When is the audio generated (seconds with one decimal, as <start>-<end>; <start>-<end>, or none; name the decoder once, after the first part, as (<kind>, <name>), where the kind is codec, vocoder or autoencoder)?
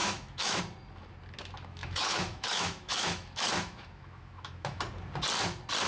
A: 0.0-0.6 (autoencoder, DAC-VAE); 1.8-4.8